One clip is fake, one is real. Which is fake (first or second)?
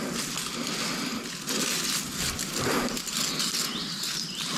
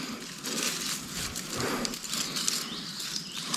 second